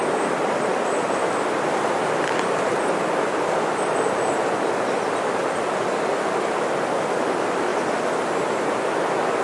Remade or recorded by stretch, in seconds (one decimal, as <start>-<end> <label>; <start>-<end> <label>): 0.0-0.7 recorded; 0.7-5.4 remade; 5.4-9.4 recorded